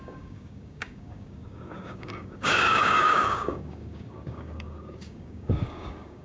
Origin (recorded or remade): remade